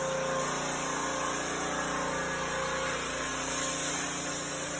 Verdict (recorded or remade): recorded